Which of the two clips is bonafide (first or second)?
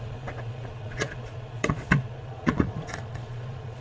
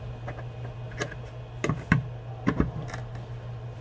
second